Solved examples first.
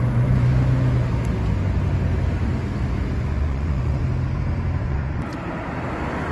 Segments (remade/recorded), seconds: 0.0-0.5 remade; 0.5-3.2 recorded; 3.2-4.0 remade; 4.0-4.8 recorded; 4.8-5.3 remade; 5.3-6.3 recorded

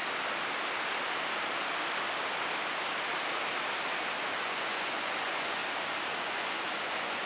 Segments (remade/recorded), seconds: 0.0-4.4 recorded; 4.4-5.6 remade; 5.6-6.2 recorded; 6.2-7.3 remade

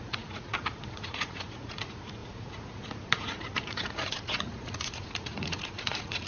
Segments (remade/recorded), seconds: 0.0-6.3 remade